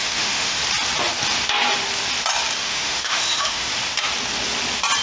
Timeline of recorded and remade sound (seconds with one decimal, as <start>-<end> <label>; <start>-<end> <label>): 0.0-0.6 remade; 0.6-2.6 recorded; 2.6-3.7 remade; 3.7-5.0 recorded